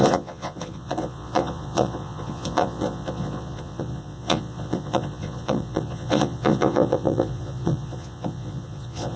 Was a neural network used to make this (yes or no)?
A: yes